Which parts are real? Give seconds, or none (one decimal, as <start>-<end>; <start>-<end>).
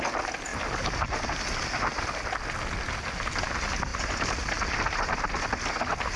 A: 0.0-6.2